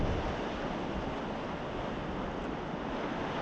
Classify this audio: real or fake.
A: real